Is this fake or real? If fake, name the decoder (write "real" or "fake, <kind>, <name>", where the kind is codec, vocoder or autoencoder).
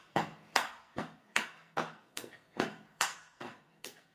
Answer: fake, codec, SNAC